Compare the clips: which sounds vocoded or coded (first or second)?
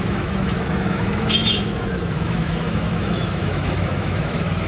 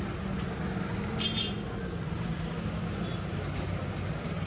first